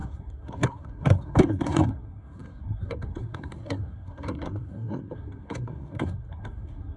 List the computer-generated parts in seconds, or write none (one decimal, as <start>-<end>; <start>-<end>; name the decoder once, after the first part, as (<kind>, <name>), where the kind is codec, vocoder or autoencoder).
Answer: 0.0-7.0 (codec, SNAC)